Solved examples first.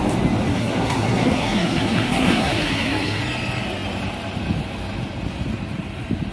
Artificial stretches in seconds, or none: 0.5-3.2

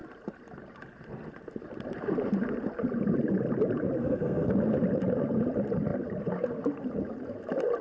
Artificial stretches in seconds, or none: 4.0-4.5

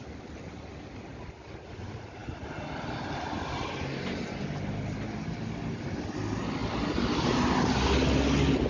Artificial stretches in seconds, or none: none

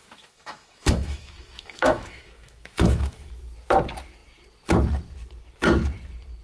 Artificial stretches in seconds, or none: 0.0-3.3

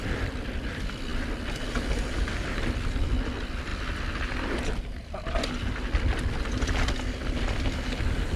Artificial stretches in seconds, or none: none

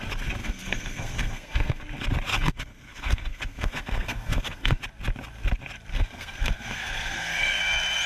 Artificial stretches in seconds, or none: 0.4-1.8; 2.3-4.8; 5.9-7.6